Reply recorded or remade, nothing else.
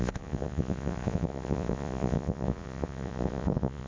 remade